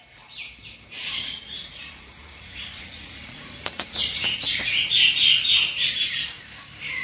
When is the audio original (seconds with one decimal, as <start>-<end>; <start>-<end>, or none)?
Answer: 0.0-1.0; 5.2-7.0